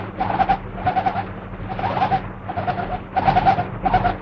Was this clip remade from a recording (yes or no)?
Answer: no